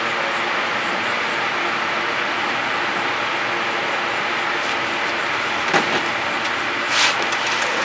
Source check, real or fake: real